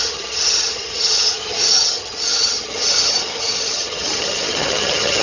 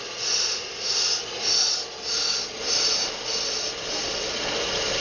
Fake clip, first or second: first